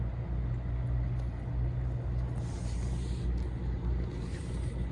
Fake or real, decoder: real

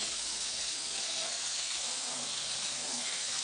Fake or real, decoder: fake, codec, SNAC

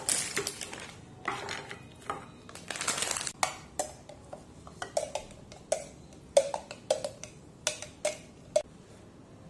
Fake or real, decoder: real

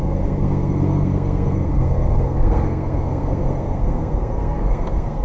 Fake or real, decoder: fake, codec, SNAC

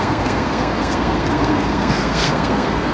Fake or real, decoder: fake, codec, SNAC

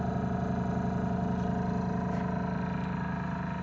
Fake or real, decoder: real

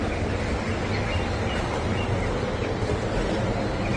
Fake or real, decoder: real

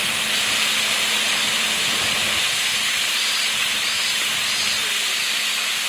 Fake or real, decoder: real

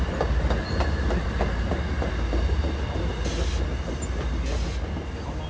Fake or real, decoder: real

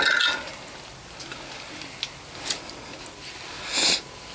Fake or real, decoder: real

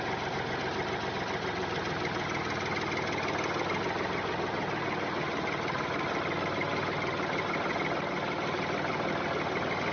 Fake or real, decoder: real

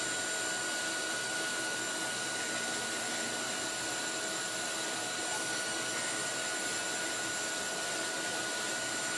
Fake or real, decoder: real